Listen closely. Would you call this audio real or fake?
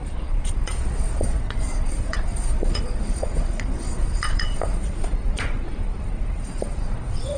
fake